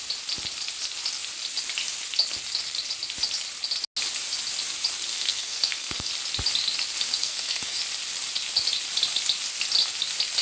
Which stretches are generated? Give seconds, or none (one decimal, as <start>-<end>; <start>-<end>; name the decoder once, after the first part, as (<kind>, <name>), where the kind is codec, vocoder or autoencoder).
5.1-6.1 (codec, SNAC); 7.1-7.8